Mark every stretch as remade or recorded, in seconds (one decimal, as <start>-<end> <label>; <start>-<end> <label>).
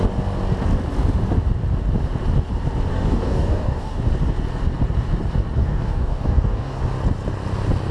0.0-2.9 recorded; 2.9-4.0 remade; 4.0-5.6 recorded; 5.6-6.8 remade; 6.8-7.9 recorded